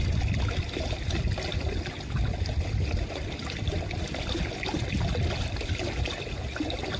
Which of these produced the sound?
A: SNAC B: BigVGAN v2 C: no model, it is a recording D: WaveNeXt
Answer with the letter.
C